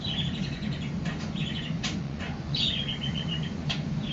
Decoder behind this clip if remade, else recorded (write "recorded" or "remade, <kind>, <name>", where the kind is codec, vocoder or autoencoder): remade, vocoder, Vocos